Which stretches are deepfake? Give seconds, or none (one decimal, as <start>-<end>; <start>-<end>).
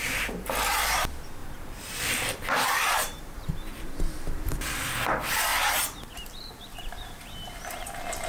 1.4-4.6; 5.5-7.8